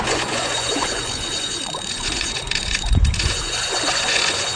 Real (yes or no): no